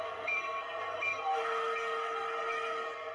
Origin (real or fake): fake